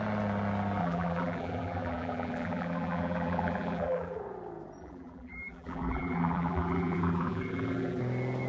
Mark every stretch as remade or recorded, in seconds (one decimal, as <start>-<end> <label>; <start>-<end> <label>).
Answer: 0.0-0.8 recorded; 0.8-4.2 remade; 4.2-4.8 recorded; 4.8-8.0 remade; 8.0-8.5 recorded